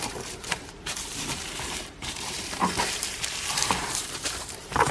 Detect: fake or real fake